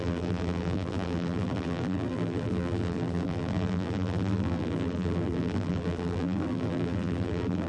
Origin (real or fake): fake